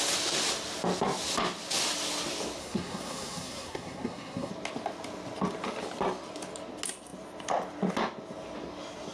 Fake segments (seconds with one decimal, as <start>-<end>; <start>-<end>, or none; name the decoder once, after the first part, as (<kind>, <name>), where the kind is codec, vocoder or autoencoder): 2.6-4.5 (codec, SNAC)